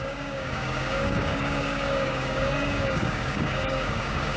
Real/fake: fake